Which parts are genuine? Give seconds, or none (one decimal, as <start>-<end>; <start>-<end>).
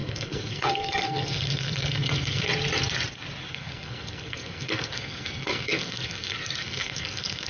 2.5-3.5